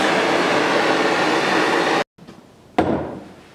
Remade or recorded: recorded